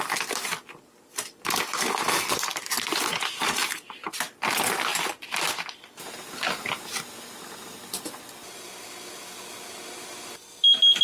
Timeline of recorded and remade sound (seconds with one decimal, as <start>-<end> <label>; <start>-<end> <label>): 0.0-2.5 recorded; 2.5-3.0 remade; 3.0-4.9 recorded; 4.9-9.5 remade; 9.5-11.0 recorded

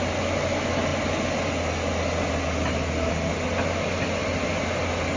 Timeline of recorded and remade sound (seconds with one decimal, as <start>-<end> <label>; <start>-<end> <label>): 0.0-5.2 recorded